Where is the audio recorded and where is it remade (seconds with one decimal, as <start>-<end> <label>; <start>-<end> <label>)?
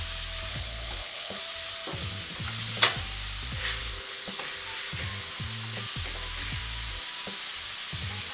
0.0-0.5 recorded; 0.5-1.4 remade; 1.4-3.8 recorded; 3.8-4.4 remade; 4.4-8.3 recorded